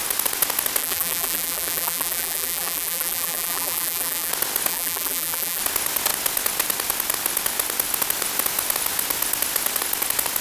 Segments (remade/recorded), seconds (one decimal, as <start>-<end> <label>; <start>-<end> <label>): 0.0-0.8 recorded; 0.8-4.3 remade; 4.3-4.7 recorded; 4.7-5.6 remade; 5.6-10.4 recorded